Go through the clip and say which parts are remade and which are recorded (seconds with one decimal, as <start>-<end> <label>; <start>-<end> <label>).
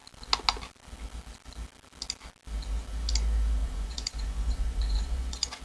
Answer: 0.0-3.6 recorded; 3.6-5.6 remade